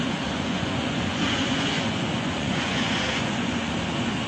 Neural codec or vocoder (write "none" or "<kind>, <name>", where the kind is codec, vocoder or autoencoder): vocoder, Vocos